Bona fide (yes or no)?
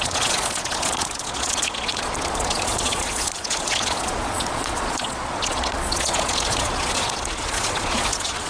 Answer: no